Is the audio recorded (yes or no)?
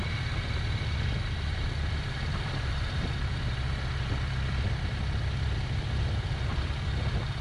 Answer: no